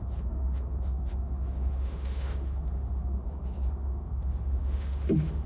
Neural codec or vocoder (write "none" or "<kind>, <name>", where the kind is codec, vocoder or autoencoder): autoencoder, DAC-VAE